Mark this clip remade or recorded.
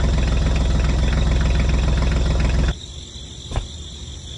recorded